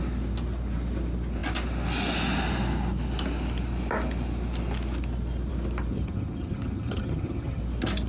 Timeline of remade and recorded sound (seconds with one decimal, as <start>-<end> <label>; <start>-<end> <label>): 0.0-5.9 recorded; 5.9-7.6 remade; 7.6-8.1 recorded